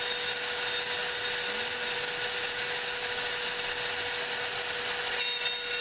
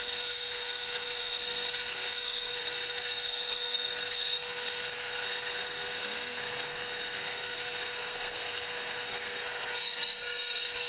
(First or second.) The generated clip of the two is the second